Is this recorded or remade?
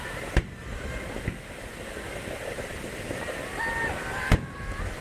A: recorded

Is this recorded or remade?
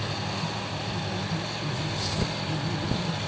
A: recorded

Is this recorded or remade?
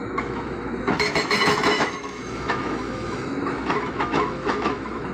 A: remade